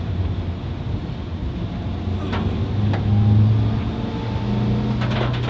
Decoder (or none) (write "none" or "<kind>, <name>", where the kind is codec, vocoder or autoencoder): none